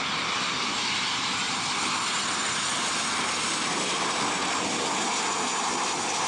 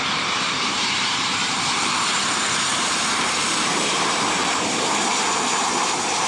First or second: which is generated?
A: second